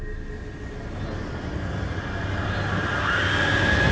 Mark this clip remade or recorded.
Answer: recorded